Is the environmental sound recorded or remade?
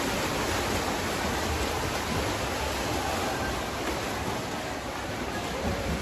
recorded